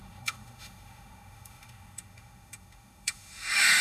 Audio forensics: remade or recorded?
remade